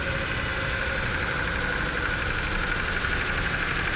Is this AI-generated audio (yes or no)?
no